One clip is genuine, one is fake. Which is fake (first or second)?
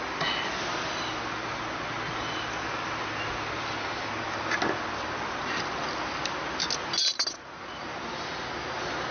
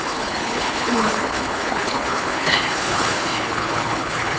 second